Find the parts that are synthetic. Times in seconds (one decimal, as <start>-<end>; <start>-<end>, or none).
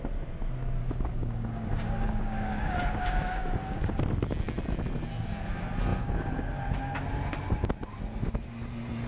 0.8-4.0